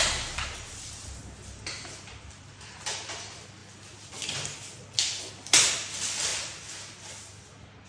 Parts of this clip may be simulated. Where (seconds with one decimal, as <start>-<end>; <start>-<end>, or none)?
none